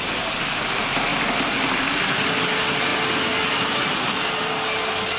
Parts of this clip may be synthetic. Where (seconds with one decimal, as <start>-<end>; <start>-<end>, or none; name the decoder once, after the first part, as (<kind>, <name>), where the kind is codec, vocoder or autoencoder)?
none